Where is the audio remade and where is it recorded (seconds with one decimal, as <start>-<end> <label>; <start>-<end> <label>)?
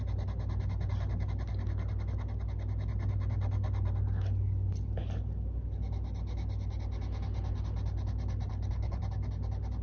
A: 0.0-8.5 recorded; 8.5-9.0 remade; 9.0-9.8 recorded